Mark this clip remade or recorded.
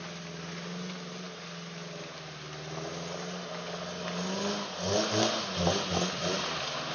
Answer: recorded